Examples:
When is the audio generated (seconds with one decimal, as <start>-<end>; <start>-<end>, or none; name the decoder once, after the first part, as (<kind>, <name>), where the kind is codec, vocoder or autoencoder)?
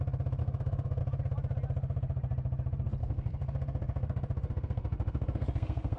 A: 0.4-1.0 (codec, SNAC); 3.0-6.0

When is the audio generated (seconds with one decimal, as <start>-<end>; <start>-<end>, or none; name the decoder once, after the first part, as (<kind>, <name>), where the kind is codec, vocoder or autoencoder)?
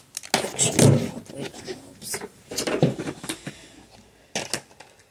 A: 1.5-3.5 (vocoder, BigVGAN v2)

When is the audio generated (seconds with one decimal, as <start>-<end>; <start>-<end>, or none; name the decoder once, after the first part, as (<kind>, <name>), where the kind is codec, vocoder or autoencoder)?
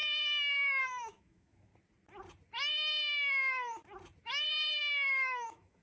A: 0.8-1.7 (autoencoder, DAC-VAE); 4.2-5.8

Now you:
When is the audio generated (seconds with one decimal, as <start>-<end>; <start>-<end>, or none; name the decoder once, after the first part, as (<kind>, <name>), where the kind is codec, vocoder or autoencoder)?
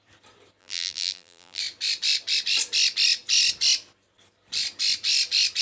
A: 0.6-1.6 (vocoder, BigVGAN v2)